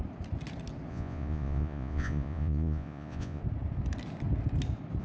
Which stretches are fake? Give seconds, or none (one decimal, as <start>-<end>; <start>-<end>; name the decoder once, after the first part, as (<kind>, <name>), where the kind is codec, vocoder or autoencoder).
0.9-3.4 (vocoder, Vocos)